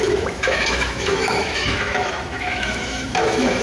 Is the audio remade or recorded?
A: remade